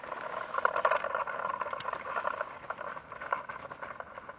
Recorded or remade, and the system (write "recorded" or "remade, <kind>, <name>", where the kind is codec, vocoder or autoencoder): recorded